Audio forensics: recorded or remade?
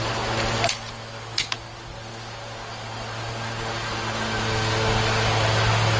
recorded